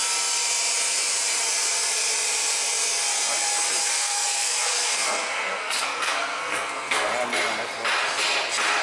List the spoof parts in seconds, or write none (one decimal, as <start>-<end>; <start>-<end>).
3.8-7.1

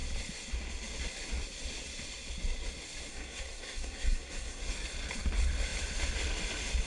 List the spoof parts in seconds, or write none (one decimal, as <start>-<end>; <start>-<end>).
3.1-4.6